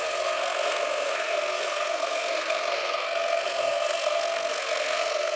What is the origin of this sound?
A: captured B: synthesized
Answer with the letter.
B